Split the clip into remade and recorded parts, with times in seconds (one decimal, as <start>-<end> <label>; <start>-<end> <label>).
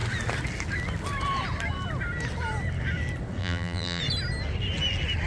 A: 0.0-3.4 recorded; 3.4-4.0 remade; 4.0-5.3 recorded